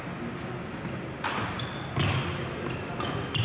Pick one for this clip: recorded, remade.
recorded